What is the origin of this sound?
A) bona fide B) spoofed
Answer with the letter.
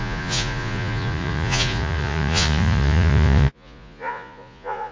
B